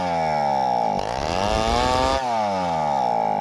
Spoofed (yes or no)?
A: no